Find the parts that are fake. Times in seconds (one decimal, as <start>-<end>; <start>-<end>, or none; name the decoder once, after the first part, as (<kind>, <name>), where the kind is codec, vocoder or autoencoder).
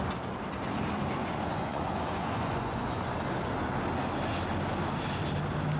1.2-3.1 (vocoder, Vocos)